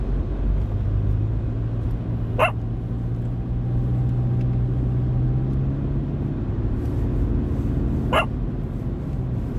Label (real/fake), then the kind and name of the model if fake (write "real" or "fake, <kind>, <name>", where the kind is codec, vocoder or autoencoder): real